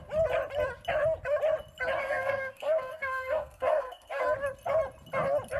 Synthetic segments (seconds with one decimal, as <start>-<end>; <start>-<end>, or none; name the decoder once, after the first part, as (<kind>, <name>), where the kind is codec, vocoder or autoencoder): 2.0-4.2 (codec, SNAC)